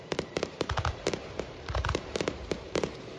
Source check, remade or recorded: remade